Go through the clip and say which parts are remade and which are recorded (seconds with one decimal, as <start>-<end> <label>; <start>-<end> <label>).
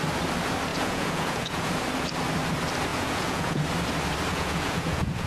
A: 0.0-0.7 recorded; 0.7-1.7 remade; 1.7-2.9 recorded; 2.9-3.6 remade; 3.6-4.3 recorded; 4.3-5.3 remade